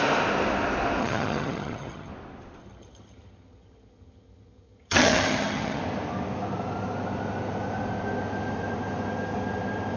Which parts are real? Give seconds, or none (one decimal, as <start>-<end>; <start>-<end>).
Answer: 0.0-1.0; 2.1-2.6; 5.8-10.0